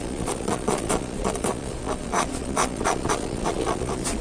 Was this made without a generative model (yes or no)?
no